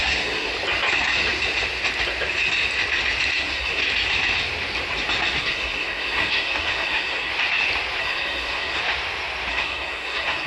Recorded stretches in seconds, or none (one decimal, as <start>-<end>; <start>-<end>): 0.5-3.3; 3.8-5.4; 7.3-8.0; 8.8-9.5